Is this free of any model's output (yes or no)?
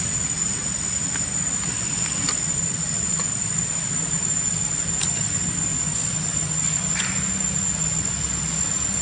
yes